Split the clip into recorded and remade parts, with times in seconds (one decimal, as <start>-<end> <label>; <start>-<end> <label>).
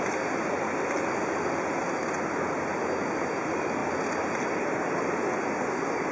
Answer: 0.0-6.1 recorded